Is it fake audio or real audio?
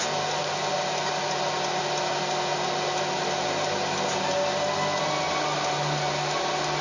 real